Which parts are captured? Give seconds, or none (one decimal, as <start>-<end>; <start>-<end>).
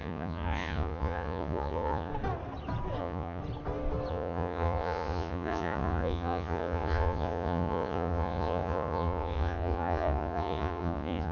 2.1-3.0; 3.4-4.1